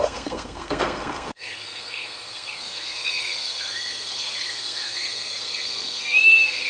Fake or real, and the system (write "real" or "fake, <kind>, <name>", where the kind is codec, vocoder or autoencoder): fake, codec, SNAC